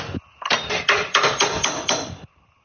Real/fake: real